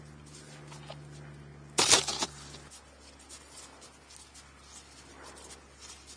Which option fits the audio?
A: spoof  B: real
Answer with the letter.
B